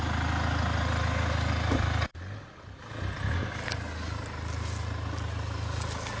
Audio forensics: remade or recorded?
recorded